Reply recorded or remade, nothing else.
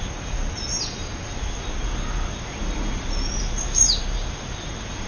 recorded